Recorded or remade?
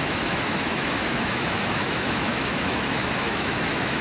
remade